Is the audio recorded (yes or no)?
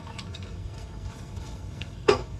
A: no